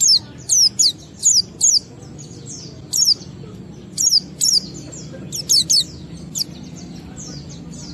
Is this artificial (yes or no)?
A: no